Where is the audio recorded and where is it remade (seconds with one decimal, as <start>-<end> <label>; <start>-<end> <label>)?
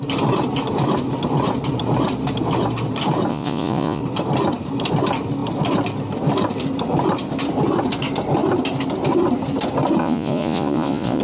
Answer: 0.0-3.3 recorded; 3.3-4.0 remade; 4.0-10.0 recorded; 10.0-11.2 remade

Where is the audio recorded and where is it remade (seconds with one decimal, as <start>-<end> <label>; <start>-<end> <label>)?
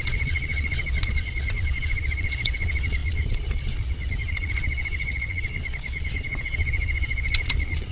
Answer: 0.0-7.9 remade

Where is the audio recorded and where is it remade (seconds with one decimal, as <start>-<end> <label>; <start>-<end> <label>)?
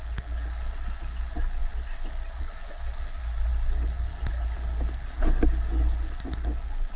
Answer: 0.0-7.0 recorded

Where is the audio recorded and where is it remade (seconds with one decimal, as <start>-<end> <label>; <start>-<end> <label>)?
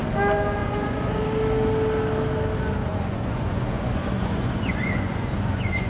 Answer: 0.0-0.6 recorded; 0.6-1.2 remade; 1.2-2.9 recorded; 2.9-5.9 remade